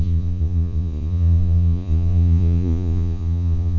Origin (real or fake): fake